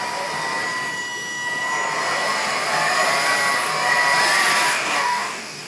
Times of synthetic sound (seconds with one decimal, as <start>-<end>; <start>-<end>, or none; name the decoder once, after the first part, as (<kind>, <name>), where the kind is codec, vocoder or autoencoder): 4.7-5.7 (codec, DAC)